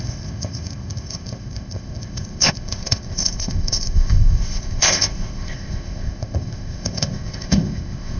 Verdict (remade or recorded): remade